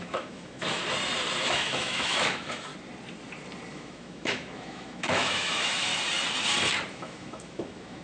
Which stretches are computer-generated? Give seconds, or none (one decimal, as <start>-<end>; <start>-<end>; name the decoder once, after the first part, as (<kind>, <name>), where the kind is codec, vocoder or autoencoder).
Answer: 0.0-0.8 (autoencoder, DAC-VAE); 1.4-2.7; 3.7-5.9; 6.9-8.0